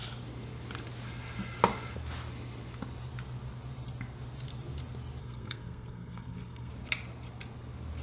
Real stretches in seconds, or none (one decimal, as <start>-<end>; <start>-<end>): 0.0-5.2; 6.7-8.0